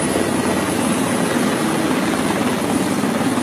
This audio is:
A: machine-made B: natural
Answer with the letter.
B